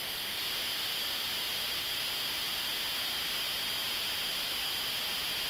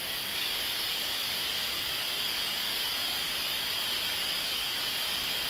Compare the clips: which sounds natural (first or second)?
first